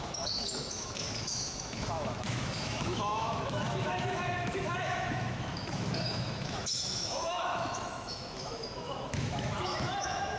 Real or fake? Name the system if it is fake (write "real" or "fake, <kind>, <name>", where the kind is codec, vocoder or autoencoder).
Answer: fake, autoencoder, DAC-VAE